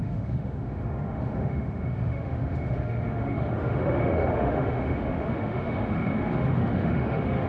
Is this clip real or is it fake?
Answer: fake